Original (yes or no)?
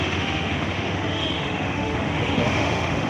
no